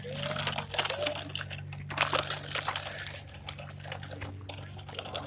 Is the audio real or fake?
real